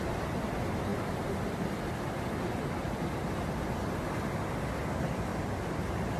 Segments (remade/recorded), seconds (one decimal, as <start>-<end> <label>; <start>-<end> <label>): 0.0-6.2 recorded